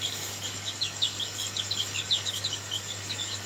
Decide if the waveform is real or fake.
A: fake